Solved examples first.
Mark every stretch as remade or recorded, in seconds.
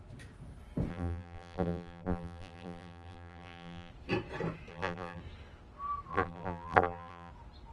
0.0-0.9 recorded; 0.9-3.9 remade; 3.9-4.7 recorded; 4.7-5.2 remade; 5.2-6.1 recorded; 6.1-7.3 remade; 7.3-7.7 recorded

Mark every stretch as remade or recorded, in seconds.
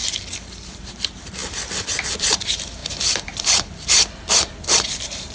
0.0-5.3 remade